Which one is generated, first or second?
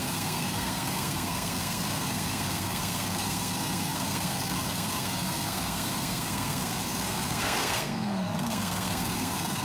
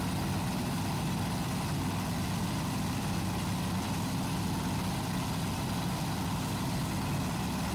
first